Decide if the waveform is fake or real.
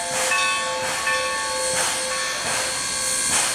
real